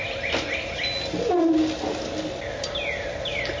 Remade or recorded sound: recorded